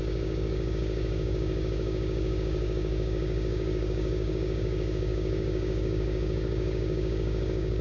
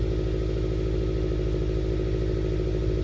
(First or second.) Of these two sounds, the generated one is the first